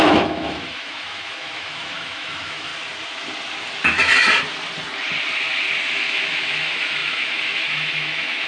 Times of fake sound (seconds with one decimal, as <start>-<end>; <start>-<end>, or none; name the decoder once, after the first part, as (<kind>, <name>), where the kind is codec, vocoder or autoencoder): 0.0-2.7 (autoencoder, DAC-VAE); 5.9-8.5